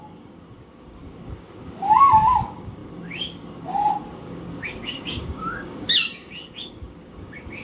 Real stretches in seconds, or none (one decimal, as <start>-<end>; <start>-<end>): none